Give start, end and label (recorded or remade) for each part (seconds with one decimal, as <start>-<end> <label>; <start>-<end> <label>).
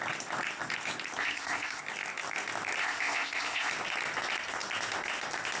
0.0-1.2 recorded; 1.2-1.8 remade; 1.8-2.8 recorded; 2.8-3.7 remade; 3.7-5.6 recorded